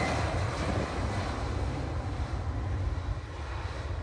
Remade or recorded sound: recorded